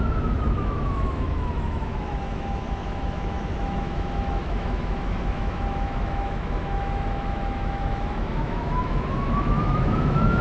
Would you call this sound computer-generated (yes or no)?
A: yes